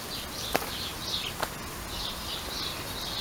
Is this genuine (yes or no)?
yes